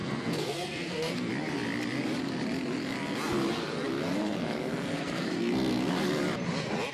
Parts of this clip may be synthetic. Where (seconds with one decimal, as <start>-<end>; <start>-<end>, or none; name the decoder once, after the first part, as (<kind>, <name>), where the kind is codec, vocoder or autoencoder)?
0.0-1.3 (codec, SNAC); 4.2-5.9